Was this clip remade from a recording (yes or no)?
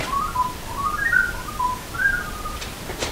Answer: no